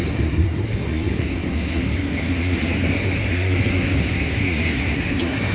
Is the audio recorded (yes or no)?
no